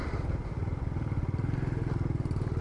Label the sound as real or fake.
real